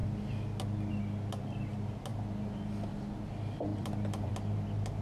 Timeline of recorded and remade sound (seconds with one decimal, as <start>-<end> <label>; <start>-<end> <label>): 0.0-3.7 recorded; 3.7-4.3 remade; 4.3-5.0 recorded